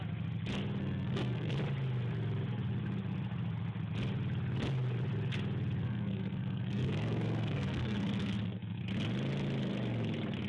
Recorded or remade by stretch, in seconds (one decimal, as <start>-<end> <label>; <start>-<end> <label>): 0.0-0.8 recorded; 0.8-1.5 remade; 1.5-5.8 recorded; 5.8-8.8 remade; 8.8-10.5 recorded